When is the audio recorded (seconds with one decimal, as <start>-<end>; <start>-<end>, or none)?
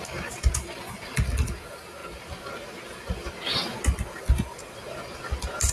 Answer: 0.0-5.7